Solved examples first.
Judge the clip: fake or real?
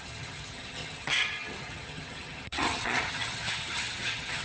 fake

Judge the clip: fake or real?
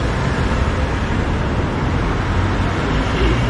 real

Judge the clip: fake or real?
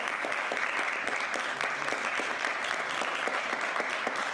real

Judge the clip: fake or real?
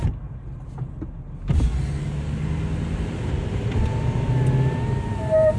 real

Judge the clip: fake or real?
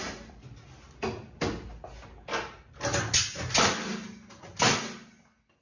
real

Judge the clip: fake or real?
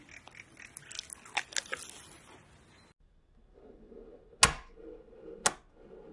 real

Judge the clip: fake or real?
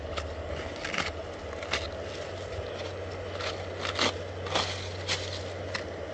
real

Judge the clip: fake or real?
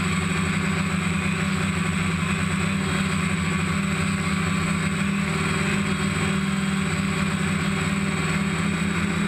real